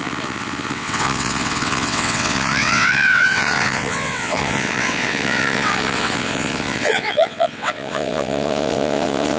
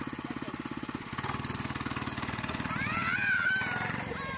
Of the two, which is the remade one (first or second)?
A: first